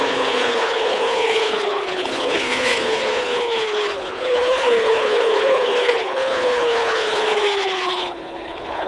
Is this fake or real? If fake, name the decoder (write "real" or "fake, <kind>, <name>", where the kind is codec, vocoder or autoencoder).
fake, codec, HILCodec